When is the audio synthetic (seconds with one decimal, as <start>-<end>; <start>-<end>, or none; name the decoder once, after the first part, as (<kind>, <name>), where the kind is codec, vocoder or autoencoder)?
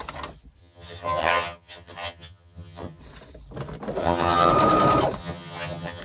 0.6-3.0 (vocoder, HiFi-GAN); 4.0-4.5; 5.2-6.0